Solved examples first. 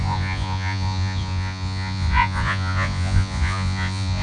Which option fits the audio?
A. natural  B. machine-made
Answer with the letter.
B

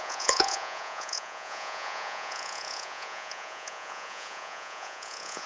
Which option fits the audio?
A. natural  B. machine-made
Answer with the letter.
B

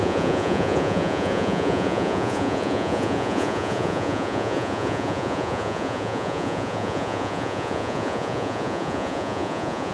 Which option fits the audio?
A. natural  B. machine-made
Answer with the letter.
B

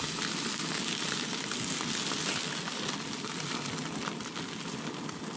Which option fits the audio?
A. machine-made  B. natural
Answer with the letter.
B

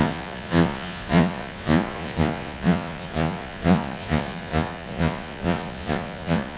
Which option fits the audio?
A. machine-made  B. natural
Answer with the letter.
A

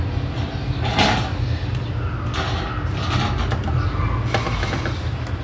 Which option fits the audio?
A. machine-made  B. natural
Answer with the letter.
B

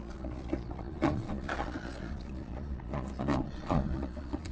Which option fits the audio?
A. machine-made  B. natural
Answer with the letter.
A